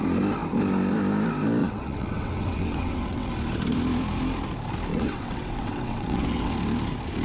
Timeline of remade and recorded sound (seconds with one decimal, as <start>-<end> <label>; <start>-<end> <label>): 0.0-1.6 recorded; 1.6-3.3 remade; 3.3-4.9 recorded; 4.9-6.5 remade; 6.5-7.2 recorded